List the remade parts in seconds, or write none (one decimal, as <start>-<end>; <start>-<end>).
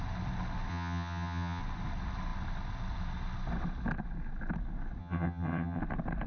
0.7-1.6; 5.0-5.8